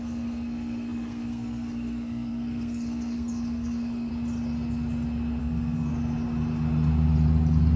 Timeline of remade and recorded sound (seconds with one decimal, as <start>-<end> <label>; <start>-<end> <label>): 0.0-4.1 remade; 4.1-5.4 recorded; 5.4-5.9 remade; 5.9-7.8 recorded